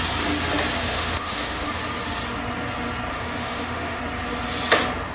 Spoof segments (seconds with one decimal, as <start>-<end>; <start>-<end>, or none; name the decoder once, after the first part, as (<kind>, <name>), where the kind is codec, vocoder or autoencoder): 0.8-1.7 (autoencoder, DAC-VAE); 3.1-4.0

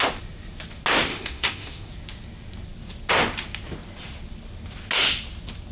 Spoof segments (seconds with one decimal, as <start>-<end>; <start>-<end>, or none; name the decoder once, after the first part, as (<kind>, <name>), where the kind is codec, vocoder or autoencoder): 1.1-1.9 (autoencoder, DAC-VAE)